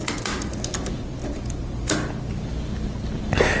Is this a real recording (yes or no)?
no